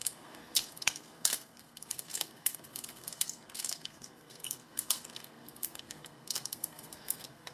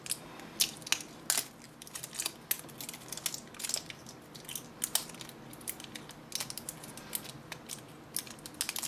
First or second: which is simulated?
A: first